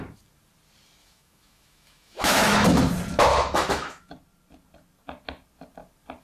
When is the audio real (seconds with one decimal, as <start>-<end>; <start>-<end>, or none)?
0.0-1.0; 2.8-3.3; 4.1-6.2